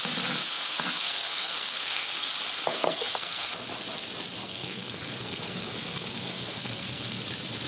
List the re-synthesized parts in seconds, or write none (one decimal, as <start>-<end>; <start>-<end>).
0.4-2.3; 2.7-3.5; 4.4-7.2